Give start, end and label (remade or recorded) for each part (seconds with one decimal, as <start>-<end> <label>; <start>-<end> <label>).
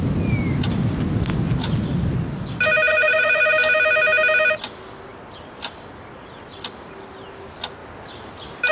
0.0-2.9 recorded; 2.9-3.5 remade; 3.5-8.7 recorded